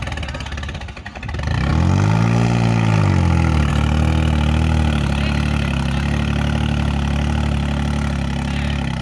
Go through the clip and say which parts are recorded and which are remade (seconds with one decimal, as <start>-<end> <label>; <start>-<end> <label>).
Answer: 0.0-9.0 recorded